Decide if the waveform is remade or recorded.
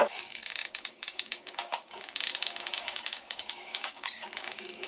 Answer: remade